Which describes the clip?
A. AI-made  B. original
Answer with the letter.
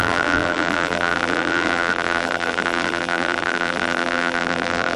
A